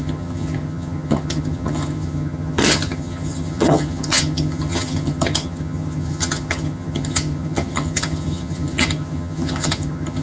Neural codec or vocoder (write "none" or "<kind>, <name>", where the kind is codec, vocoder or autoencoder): vocoder, HiFi-GAN